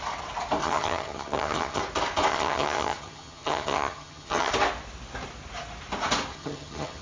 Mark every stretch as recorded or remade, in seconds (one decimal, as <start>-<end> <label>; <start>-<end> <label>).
0.0-0.6 recorded; 0.6-1.8 remade; 1.8-2.3 recorded; 2.3-4.5 remade; 4.5-6.3 recorded; 6.3-7.0 remade